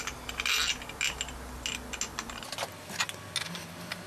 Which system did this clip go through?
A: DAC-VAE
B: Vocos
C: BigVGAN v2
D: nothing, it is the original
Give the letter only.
D